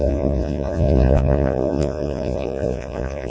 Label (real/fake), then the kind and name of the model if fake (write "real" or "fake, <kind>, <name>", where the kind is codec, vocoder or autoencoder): fake, vocoder, Vocos